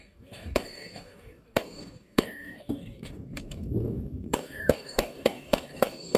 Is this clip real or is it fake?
fake